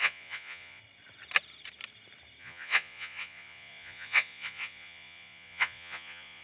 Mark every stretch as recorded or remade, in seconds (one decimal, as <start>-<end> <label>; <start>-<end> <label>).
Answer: 0.0-0.8 remade; 0.8-2.4 recorded; 2.4-6.4 remade